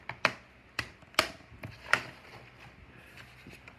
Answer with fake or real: real